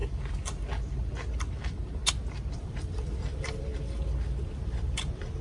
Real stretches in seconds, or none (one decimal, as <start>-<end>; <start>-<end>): 0.0-1.5; 2.0-2.5; 3.7-4.4

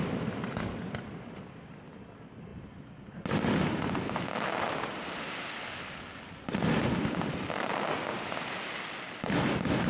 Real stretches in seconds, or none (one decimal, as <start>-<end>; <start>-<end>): 0.0-9.9

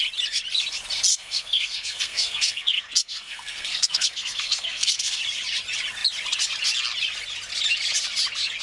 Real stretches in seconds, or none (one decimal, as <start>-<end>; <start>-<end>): 0.0-1.1; 5.2-8.6

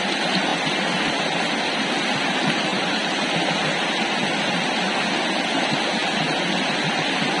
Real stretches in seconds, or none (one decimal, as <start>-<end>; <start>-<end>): 0.0-2.7; 3.3-7.4

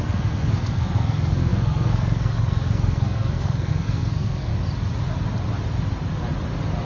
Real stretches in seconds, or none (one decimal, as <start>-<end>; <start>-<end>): 4.5-6.8